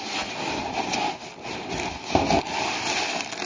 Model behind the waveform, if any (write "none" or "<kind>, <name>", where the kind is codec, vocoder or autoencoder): none